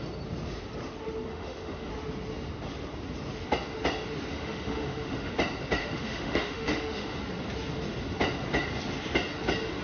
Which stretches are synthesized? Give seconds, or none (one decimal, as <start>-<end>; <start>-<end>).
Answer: 1.3-1.9; 4.3-5.3; 5.8-7.2

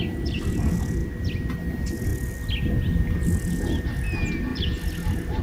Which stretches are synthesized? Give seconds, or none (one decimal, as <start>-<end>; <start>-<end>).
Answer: none

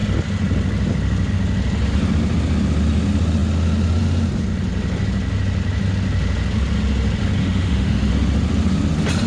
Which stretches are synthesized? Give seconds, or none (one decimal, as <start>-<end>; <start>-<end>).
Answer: 7.4-8.1

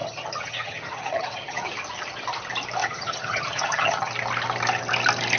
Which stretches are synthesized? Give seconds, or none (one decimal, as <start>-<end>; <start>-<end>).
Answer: 0.0-1.7; 2.8-4.1

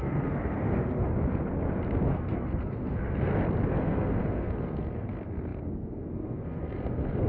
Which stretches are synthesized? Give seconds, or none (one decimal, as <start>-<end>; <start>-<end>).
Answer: 0.0-1.1; 2.1-3.3; 3.8-7.3

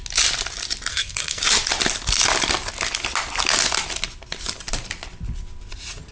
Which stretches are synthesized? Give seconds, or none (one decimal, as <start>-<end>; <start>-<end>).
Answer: 0.9-1.4